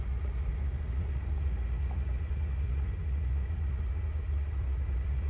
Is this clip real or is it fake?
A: fake